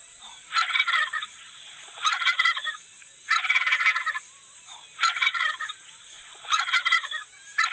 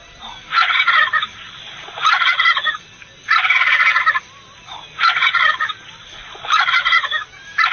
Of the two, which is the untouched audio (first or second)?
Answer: second